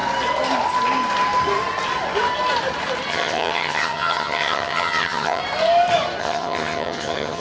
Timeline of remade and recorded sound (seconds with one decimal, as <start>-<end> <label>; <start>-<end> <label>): 0.0-3.1 recorded; 3.1-5.4 remade; 5.4-6.2 recorded; 6.2-7.4 remade